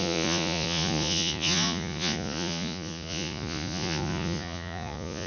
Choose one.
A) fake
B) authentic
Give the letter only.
A